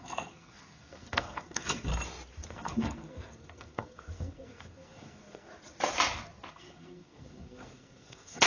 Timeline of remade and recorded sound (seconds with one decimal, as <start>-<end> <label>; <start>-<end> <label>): 0.0-1.9 remade; 1.9-2.5 recorded; 2.5-5.5 remade; 5.5-6.5 recorded; 6.5-8.5 remade